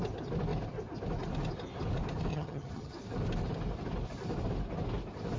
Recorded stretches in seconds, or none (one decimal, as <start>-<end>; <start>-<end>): 0.0-2.3; 2.9-5.4